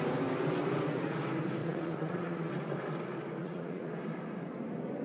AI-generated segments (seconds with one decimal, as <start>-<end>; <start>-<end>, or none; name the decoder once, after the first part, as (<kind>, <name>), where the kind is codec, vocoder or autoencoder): 1.6-2.5 (vocoder, Vocos); 3.4-3.9